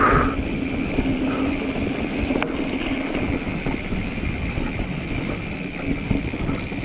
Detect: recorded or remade recorded